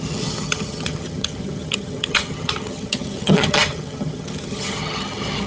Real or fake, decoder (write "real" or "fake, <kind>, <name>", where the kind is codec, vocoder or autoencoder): fake, vocoder, HiFi-GAN